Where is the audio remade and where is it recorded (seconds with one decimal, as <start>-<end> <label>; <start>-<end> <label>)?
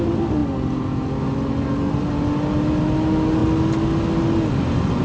0.0-5.0 recorded